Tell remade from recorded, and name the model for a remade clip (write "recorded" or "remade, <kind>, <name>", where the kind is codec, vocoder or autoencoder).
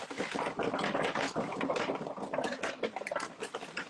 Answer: recorded